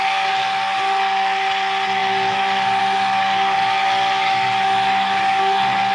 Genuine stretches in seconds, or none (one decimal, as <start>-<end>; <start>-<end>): 0.0-5.9